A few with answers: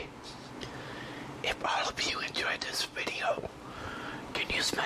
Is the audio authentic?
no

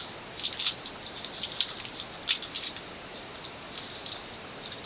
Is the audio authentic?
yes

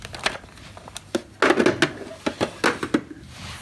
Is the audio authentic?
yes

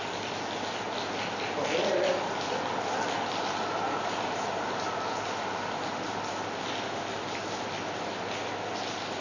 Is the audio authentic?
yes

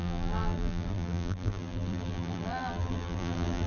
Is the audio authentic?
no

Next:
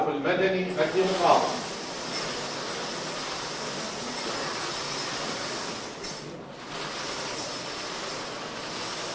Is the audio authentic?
yes